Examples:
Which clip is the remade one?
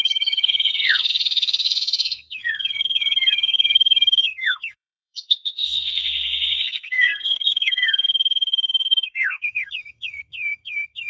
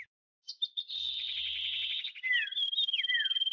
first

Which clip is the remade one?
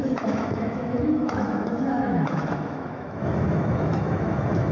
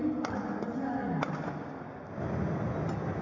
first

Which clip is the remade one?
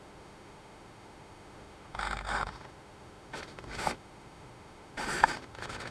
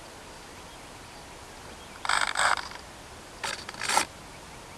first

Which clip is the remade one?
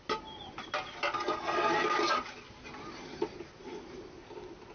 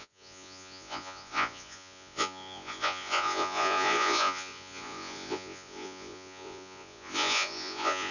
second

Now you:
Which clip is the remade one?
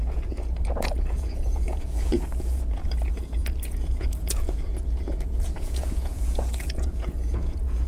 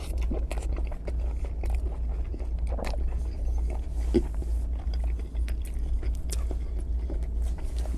first